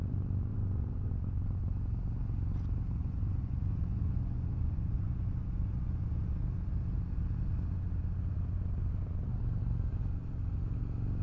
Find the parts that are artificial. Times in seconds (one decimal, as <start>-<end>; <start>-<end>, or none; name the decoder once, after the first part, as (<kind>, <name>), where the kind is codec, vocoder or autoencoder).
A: 0.5-1.1 (vocoder, Vocos); 3.0-6.4